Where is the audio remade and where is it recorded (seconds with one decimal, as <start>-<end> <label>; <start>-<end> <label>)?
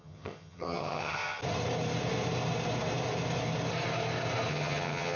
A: 0.0-1.4 remade; 1.4-4.5 recorded; 4.5-5.2 remade